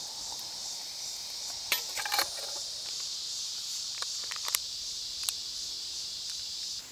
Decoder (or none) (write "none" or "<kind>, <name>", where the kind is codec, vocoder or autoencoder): vocoder, BigVGAN v2